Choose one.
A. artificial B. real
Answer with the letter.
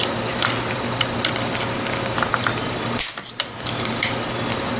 B